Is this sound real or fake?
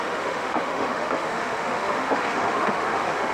fake